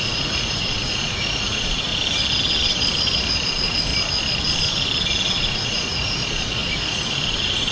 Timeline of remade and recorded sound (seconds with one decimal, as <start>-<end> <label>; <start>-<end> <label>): 0.0-1.9 remade; 1.9-3.5 recorded; 3.5-3.9 remade; 3.9-5.4 recorded; 5.4-7.7 remade

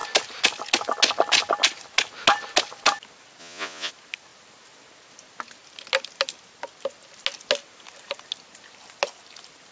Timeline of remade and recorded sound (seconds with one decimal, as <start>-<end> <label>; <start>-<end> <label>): 0.0-3.4 recorded; 3.4-3.9 remade; 3.9-9.7 recorded

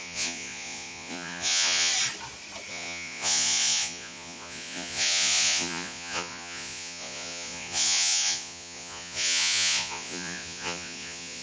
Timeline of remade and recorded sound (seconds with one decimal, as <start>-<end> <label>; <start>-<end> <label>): 0.0-1.9 remade; 1.9-2.7 recorded; 2.7-11.4 remade

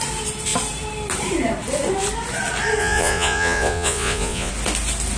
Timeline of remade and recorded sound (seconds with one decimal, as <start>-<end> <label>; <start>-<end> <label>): 0.0-2.8 recorded; 2.8-4.5 remade; 4.5-5.2 recorded

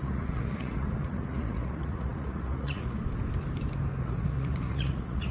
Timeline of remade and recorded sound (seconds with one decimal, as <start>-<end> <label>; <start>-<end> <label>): 0.0-3.0 remade; 3.0-4.0 recorded; 4.0-5.3 remade

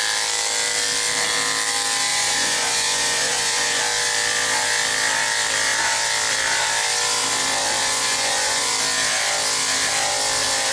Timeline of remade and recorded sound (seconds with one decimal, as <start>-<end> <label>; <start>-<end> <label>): 0.0-2.1 recorded; 2.1-3.8 remade; 3.8-7.8 recorded; 7.8-8.7 remade; 8.7-10.7 recorded

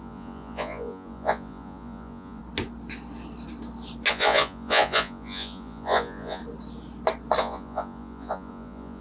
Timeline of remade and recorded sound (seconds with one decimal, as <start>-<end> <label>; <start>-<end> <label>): 0.0-2.4 remade; 2.4-4.1 recorded; 4.1-6.4 remade; 6.4-7.4 recorded; 7.4-9.0 remade